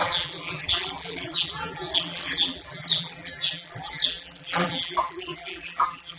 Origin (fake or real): fake